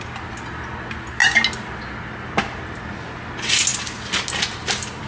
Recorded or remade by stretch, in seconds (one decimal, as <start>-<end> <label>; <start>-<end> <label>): 0.0-5.1 recorded